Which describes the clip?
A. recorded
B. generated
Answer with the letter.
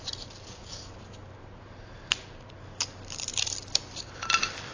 A